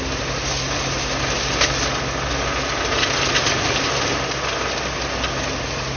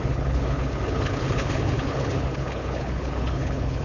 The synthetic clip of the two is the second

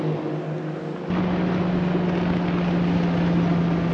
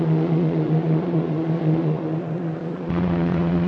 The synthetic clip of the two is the second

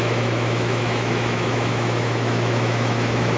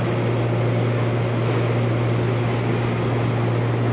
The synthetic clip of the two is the first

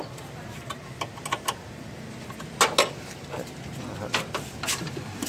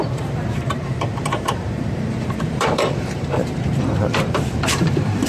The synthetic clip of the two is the second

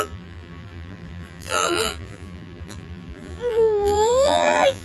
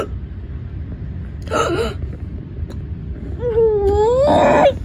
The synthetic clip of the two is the first